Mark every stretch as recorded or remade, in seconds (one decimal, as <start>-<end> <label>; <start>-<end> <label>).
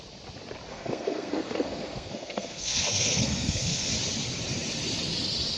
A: 0.0-0.7 recorded; 0.7-3.9 remade; 3.9-5.6 recorded